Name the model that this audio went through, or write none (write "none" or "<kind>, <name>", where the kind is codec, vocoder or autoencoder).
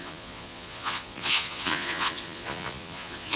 vocoder, Vocos